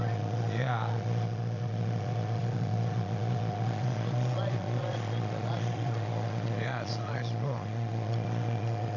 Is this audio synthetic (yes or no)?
yes